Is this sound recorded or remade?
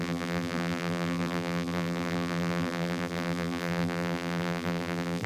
remade